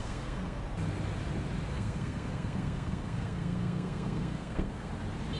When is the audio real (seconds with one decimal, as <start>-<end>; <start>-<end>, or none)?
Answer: 0.6-1.7; 4.9-5.4